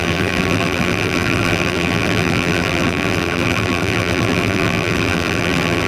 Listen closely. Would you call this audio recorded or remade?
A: remade